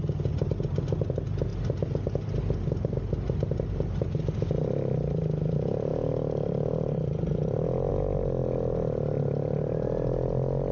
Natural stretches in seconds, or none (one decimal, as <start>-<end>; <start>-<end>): 0.0-10.7